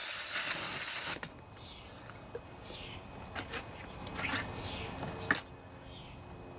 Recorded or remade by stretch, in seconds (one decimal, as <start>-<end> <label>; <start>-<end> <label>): 0.0-6.6 recorded